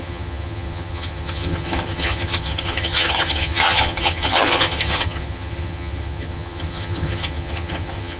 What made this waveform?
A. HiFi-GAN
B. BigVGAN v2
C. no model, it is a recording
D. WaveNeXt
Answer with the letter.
A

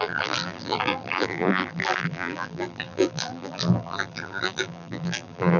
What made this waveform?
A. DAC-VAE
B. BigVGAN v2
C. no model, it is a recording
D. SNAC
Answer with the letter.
B